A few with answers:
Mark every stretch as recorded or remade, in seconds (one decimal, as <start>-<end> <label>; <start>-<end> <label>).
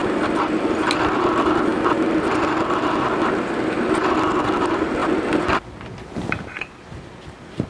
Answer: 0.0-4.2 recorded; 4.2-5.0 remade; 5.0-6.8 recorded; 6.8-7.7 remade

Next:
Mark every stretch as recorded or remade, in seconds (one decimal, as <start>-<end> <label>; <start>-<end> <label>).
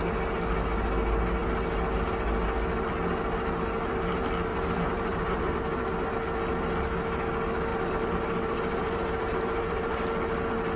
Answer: 0.0-4.5 recorded; 4.5-5.6 remade; 5.6-7.7 recorded; 7.7-10.0 remade; 10.0-10.8 recorded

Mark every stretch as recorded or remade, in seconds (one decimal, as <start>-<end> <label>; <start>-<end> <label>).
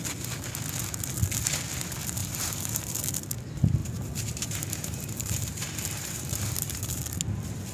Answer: 0.0-2.2 recorded; 2.2-3.0 remade; 3.0-3.8 recorded; 3.8-6.8 remade; 6.8-7.7 recorded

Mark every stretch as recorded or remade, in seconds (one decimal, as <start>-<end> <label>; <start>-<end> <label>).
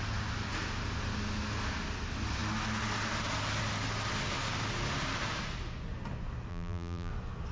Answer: 0.0-6.5 recorded; 6.5-7.1 remade; 7.1-7.5 recorded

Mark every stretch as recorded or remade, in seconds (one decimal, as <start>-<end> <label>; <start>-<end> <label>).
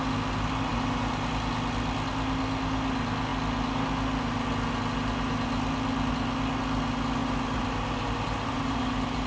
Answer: 0.0-0.7 recorded; 0.7-1.3 remade; 1.3-7.2 recorded; 7.2-9.3 remade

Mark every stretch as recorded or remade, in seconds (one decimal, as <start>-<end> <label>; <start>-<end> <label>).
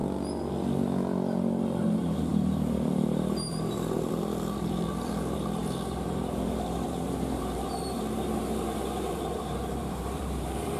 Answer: 0.0-1.8 recorded; 1.8-10.8 remade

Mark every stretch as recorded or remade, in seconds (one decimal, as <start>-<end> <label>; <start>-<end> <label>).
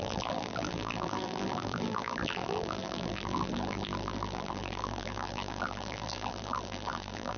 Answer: 0.0-7.4 remade